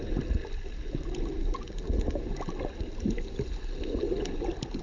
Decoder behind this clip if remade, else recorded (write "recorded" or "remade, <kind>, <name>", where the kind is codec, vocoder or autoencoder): recorded